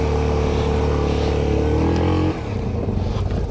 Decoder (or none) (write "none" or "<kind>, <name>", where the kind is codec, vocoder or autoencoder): none